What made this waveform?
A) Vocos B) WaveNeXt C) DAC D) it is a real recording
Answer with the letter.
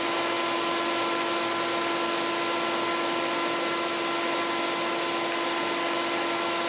D